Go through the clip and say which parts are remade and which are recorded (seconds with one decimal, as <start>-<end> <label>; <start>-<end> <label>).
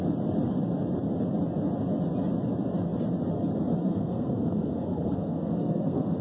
0.0-3.9 recorded; 3.9-6.2 remade